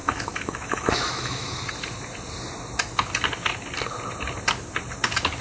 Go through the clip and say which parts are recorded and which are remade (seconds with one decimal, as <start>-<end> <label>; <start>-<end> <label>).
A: 0.0-1.7 remade; 1.7-5.4 recorded